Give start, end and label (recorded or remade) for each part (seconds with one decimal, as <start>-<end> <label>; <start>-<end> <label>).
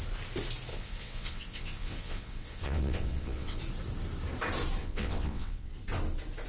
0.0-0.7 recorded; 0.7-3.6 remade; 3.6-4.8 recorded; 4.8-5.7 remade; 5.7-6.5 recorded